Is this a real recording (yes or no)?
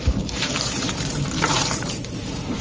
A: no